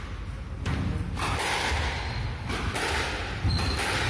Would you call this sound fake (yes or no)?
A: no